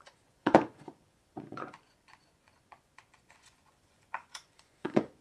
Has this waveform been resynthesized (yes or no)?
yes